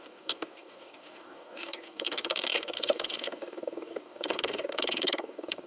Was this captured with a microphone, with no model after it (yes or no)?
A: no